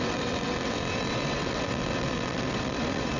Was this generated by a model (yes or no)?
yes